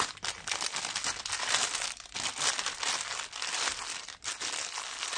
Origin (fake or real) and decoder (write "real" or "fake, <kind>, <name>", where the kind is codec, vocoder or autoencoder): real